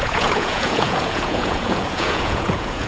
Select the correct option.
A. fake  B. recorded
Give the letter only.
A